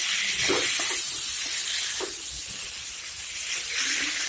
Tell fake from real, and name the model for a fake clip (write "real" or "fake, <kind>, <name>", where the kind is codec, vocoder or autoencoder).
real